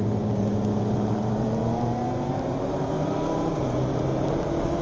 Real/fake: fake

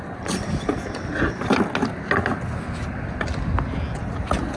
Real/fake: real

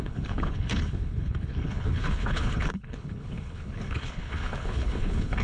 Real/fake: fake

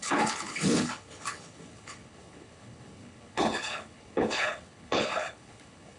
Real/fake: fake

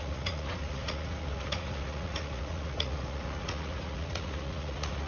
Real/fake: fake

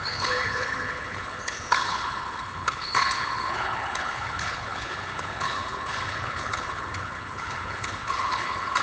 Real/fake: fake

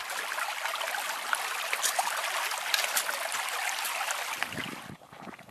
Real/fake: real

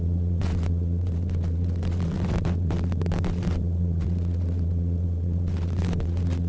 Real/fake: fake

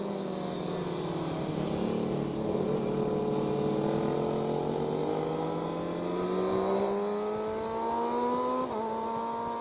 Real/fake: real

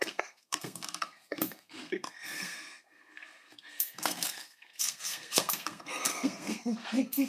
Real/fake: fake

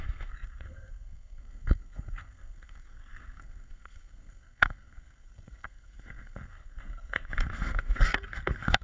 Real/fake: fake